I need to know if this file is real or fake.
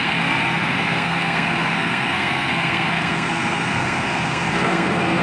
fake